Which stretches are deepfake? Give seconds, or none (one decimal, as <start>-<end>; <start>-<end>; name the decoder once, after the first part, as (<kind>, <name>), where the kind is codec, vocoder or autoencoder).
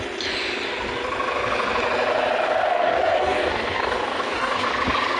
2.4-4.7 (codec, DAC)